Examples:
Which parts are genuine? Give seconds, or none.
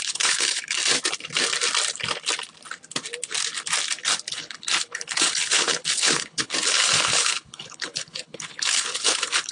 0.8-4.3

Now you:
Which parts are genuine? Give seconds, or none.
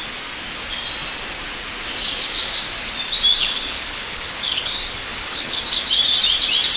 0.0-3.4; 5.6-6.8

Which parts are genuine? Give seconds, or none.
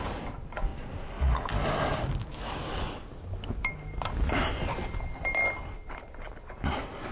0.0-7.1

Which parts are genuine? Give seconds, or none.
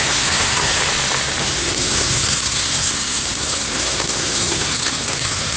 0.8-1.4